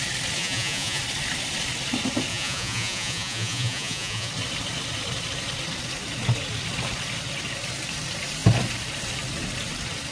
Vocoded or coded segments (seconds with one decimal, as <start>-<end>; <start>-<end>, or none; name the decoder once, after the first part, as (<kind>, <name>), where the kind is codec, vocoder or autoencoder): 0.4-1.0 (vocoder, Vocos); 2.3-4.3